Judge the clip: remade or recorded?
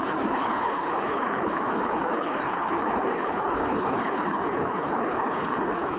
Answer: remade